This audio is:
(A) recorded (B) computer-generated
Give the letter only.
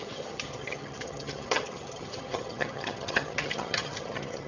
B